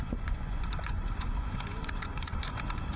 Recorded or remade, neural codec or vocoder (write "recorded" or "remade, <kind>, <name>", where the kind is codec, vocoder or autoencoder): remade, vocoder, Vocos